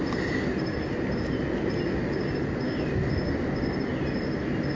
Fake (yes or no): no